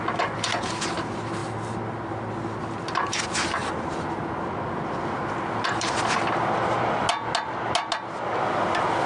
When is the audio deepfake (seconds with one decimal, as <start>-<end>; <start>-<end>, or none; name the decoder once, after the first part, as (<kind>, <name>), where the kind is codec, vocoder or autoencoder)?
none